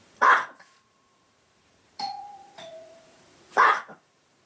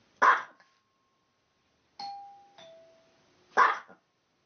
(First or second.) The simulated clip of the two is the first